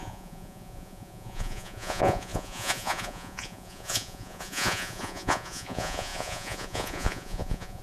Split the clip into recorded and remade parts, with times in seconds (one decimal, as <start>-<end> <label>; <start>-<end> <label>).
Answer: 0.0-7.8 remade